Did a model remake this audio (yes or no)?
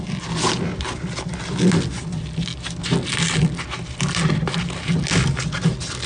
no